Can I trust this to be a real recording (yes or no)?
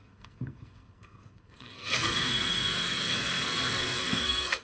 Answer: no